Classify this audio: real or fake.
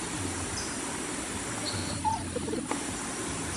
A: fake